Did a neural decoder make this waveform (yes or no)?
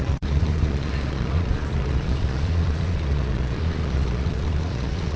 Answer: yes